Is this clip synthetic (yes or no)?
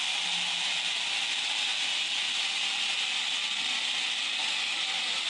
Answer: no